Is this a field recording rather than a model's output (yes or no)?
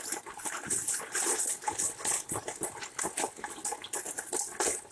yes